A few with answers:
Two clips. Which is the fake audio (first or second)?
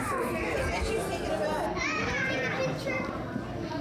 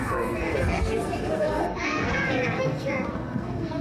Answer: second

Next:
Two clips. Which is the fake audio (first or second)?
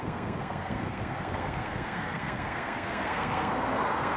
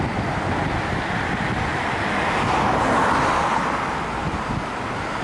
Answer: first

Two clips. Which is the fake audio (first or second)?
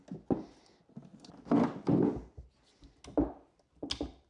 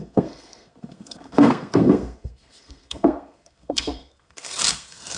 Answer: second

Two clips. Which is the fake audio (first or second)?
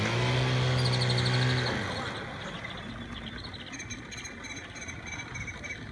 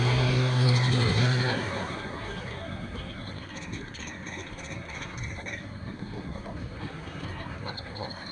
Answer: second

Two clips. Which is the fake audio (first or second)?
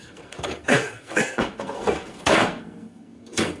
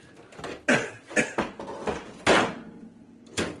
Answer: first